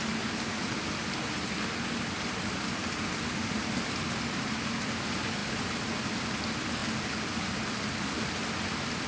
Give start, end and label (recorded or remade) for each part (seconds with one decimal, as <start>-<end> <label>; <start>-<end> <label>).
0.0-9.1 recorded

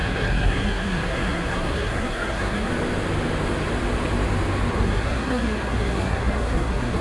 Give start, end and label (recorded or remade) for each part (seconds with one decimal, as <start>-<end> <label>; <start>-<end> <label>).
0.0-2.7 remade; 2.7-4.7 recorded; 4.7-7.0 remade

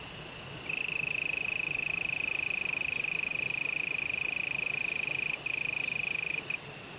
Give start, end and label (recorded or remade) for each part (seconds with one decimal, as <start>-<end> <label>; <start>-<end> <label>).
0.0-7.0 recorded

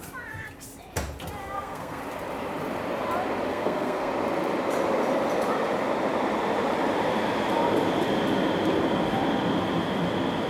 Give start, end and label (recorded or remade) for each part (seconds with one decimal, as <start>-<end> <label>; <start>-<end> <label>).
0.0-1.4 recorded; 1.4-2.0 remade; 2.0-3.5 recorded; 3.5-4.1 remade; 4.1-10.5 recorded

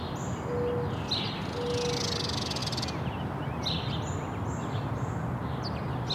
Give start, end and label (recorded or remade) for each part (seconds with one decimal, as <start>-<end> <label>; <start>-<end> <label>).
0.0-6.1 recorded

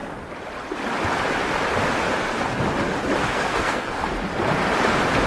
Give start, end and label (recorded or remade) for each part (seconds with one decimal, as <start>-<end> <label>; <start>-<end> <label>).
0.0-3.2 recorded; 3.2-4.0 remade; 4.0-5.3 recorded

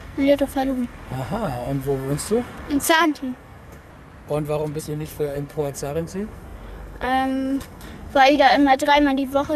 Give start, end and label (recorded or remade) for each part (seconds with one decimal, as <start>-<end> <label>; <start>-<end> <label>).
0.0-3.9 remade; 3.9-4.8 recorded; 4.8-9.6 remade